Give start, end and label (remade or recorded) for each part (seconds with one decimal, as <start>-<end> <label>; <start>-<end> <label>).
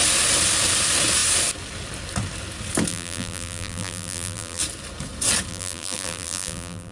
0.0-2.9 recorded; 2.9-4.6 remade; 4.6-5.5 recorded; 5.5-6.9 remade